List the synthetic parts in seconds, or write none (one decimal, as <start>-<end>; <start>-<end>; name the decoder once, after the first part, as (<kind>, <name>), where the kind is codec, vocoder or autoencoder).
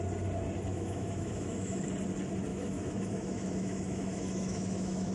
0.7-1.8 (autoencoder, DAC-VAE); 2.5-5.1